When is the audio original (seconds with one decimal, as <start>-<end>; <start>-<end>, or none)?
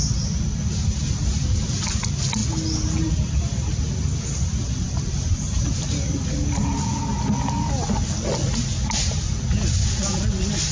0.0-10.7